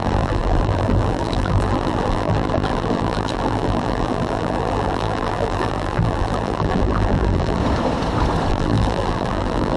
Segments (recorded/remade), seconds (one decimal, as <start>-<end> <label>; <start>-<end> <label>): 0.0-7.6 remade; 7.6-8.5 recorded; 8.5-9.8 remade